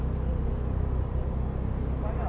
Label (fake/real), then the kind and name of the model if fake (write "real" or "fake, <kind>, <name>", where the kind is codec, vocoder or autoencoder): real